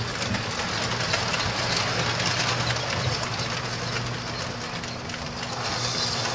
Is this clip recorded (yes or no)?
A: yes